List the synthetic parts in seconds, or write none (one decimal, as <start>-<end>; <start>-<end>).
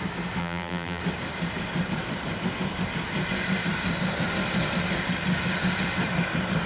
0.4-1.0